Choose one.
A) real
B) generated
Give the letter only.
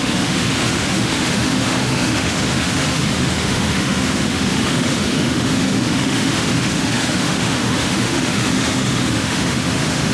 B